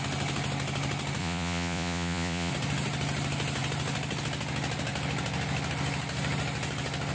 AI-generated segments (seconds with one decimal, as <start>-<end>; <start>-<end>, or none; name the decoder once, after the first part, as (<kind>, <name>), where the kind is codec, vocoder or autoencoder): 1.2-2.5 (vocoder, Vocos)